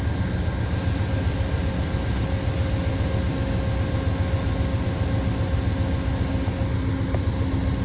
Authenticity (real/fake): real